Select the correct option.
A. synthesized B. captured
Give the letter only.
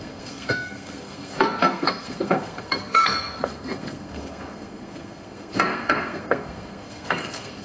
A